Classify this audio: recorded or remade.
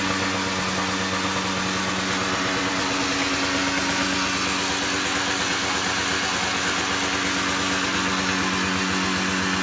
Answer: recorded